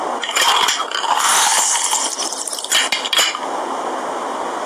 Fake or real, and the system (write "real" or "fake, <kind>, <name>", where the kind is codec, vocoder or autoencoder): real